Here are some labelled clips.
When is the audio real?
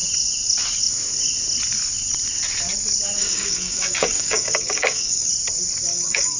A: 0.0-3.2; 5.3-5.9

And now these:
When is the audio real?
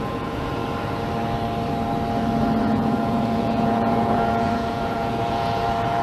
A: 0.6-2.6